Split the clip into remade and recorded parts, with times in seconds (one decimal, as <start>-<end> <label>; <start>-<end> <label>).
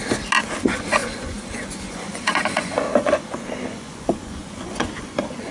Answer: 0.0-0.6 recorded; 0.6-5.5 remade